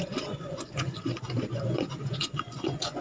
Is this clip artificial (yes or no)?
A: yes